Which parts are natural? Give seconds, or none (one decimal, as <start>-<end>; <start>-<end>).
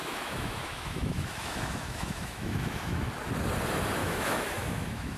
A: 3.1-4.0